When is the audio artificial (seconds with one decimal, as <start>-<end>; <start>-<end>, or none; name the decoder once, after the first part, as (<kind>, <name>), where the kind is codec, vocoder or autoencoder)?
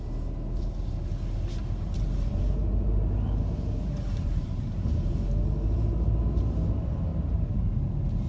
1.6-5.0 (vocoder, BigVGAN v2); 7.1-7.7